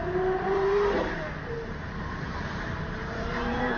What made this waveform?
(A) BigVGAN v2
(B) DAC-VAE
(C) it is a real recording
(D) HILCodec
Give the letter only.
A